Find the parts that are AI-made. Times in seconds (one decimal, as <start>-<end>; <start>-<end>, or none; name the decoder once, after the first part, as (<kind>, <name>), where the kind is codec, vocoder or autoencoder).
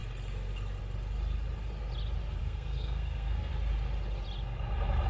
2.4-3.5 (codec, SNAC)